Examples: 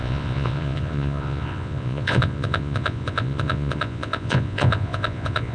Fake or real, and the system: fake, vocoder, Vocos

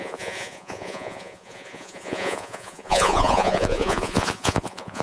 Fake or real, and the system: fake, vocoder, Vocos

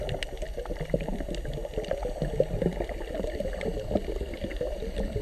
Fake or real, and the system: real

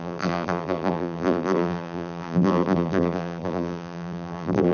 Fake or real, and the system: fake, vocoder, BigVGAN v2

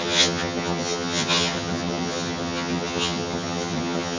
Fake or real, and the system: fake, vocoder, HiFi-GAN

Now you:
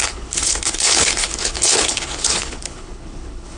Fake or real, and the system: fake, codec, HILCodec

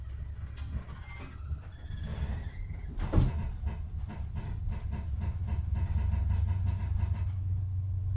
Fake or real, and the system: real